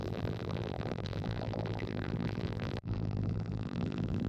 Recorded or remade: remade